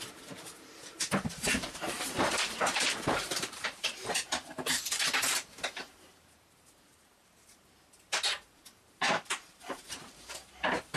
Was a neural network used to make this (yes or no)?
yes